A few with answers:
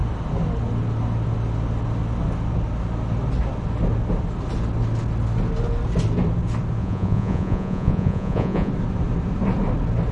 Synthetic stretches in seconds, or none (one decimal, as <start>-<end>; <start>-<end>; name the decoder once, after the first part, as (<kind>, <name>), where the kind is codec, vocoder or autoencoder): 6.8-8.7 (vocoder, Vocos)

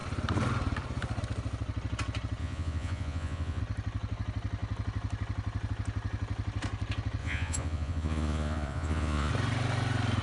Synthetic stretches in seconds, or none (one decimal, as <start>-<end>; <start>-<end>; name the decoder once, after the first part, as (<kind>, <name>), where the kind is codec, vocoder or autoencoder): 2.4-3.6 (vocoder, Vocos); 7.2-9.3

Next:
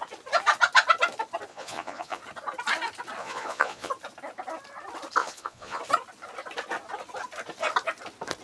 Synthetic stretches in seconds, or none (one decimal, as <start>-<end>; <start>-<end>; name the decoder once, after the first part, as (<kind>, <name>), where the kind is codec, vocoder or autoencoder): 1.5-2.2 (vocoder, Vocos); 3.2-3.9; 5.2-5.8